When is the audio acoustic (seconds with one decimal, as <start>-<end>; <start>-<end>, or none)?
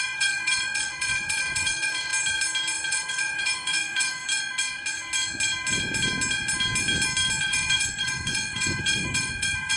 2.1-2.9; 4.2-7.4